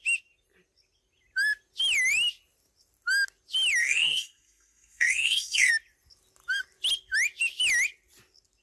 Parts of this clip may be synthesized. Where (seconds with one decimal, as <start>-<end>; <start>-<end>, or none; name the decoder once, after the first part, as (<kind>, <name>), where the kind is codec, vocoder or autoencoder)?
3.8-5.7 (codec, SNAC)